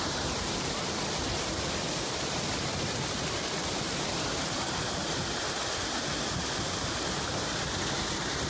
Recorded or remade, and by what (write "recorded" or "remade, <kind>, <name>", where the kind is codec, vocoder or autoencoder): recorded